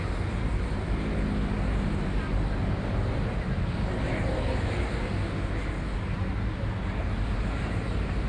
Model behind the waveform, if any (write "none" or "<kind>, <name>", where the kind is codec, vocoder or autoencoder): none